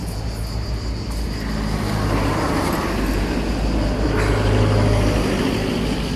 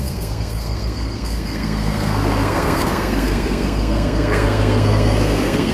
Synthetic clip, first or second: second